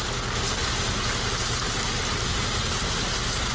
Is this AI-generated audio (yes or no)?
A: no